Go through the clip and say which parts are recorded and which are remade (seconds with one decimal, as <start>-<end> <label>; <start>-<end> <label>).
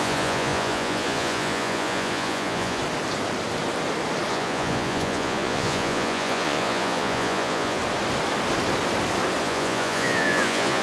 0.0-2.8 remade; 2.8-4.3 recorded; 4.3-7.8 remade; 7.8-9.4 recorded; 9.4-10.8 remade